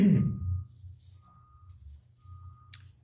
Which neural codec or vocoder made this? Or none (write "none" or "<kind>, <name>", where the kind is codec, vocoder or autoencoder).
none